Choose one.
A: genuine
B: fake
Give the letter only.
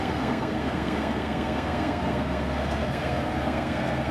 B